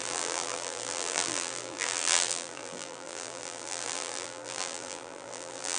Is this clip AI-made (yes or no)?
yes